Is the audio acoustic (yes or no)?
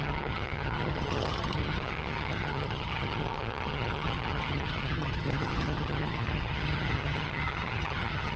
no